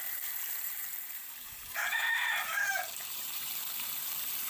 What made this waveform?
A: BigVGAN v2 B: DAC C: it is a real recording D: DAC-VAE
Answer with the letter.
A